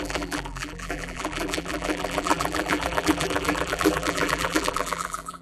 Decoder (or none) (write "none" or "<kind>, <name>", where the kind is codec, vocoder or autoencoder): vocoder, BigVGAN v2